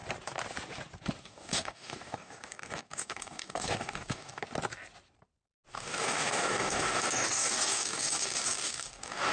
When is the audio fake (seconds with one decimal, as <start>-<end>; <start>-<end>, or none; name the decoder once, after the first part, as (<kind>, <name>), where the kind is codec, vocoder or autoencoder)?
1.2-4.4 (codec, DAC); 5.7-9.3